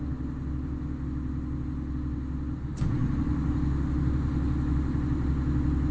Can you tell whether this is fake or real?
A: real